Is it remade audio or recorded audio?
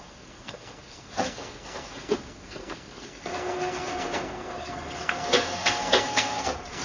remade